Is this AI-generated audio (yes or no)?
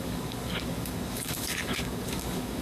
yes